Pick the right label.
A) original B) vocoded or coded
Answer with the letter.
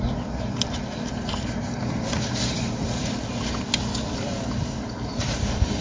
B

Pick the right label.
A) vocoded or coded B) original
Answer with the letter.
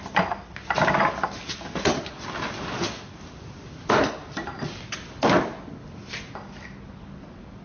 B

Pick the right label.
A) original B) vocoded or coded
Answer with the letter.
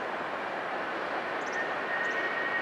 A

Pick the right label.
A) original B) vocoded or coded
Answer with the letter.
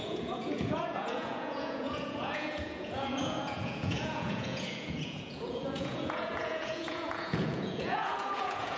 B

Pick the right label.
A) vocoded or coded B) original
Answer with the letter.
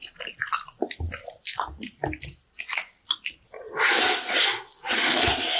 B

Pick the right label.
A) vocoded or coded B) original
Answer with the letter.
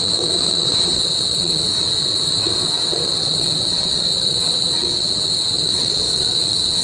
A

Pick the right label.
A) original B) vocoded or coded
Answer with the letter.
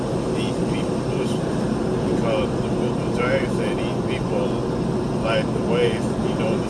A